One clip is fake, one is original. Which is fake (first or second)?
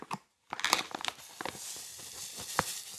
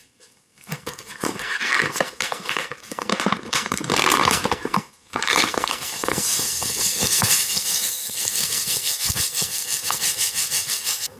second